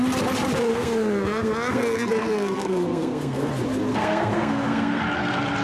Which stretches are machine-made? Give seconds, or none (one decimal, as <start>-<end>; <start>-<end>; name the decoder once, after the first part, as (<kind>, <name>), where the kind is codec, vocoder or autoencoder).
0.7-3.5 (codec, SNAC); 3.9-5.0